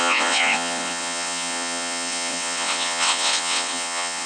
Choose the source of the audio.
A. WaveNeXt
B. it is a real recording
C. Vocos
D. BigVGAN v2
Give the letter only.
A